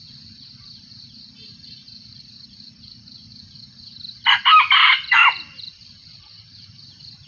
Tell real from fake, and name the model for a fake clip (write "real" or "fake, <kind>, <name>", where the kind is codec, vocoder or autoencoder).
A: fake, vocoder, BigVGAN v2